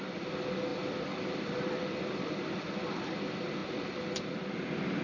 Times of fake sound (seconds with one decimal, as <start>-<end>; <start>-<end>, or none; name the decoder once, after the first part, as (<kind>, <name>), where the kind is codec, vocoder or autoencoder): none